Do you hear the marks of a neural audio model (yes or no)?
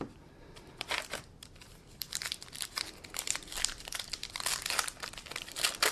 yes